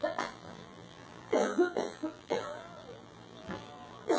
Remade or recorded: remade